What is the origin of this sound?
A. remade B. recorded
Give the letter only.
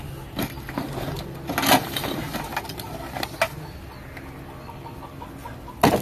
B